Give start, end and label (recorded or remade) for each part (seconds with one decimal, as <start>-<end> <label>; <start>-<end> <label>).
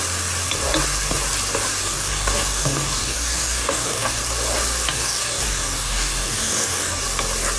0.0-1.8 recorded; 1.8-4.2 remade; 4.2-4.9 recorded; 4.9-7.0 remade; 7.0-7.6 recorded